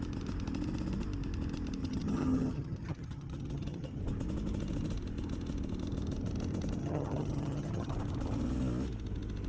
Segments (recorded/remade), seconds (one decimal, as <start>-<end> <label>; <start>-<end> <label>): 0.0-1.8 recorded; 1.8-4.0 remade; 4.0-6.8 recorded; 6.8-7.9 remade; 7.9-9.5 recorded